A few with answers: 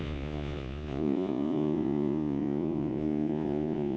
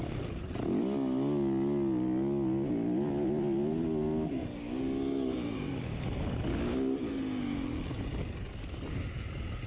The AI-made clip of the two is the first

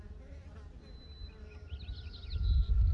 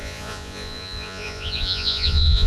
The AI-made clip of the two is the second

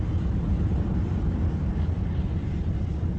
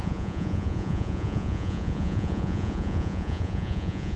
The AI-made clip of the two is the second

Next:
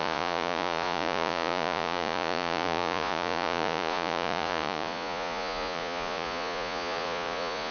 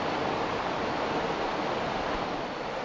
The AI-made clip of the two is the first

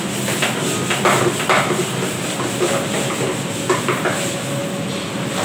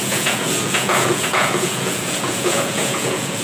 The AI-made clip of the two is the second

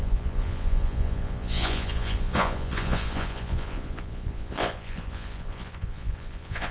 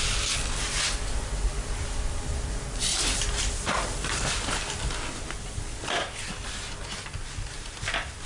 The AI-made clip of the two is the first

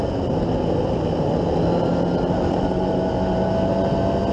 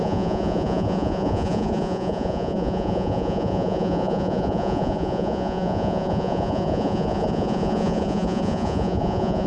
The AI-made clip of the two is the second